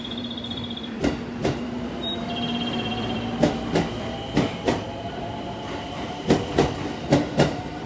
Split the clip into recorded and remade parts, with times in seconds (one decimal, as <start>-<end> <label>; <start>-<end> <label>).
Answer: 0.0-7.9 remade